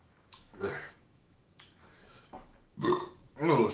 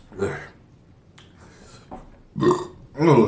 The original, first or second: second